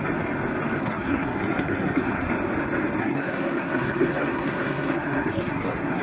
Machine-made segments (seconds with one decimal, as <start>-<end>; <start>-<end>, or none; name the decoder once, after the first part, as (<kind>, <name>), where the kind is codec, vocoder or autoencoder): 0.8-2.3 (codec, SNAC); 3.0-6.0